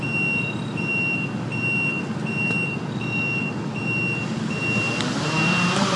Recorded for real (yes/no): yes